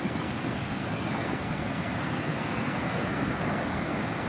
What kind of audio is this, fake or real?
fake